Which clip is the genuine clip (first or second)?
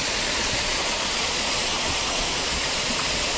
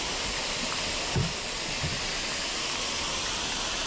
second